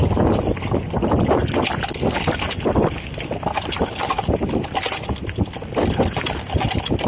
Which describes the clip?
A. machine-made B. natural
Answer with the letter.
B